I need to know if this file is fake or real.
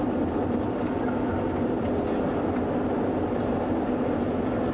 real